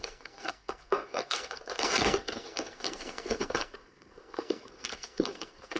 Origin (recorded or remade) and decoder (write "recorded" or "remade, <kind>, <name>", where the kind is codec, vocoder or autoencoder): remade, codec, SNAC